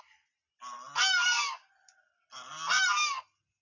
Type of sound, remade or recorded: recorded